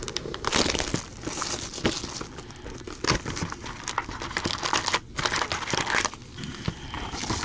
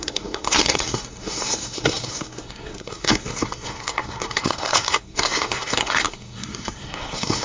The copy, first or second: second